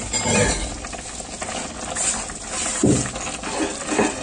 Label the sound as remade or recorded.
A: recorded